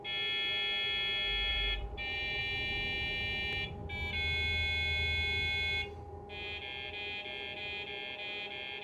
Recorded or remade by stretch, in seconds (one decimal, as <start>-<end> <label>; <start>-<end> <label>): 0.0-1.5 recorded; 1.5-2.4 remade; 2.4-8.8 recorded